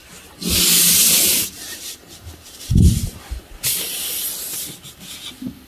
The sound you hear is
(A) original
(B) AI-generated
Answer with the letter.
A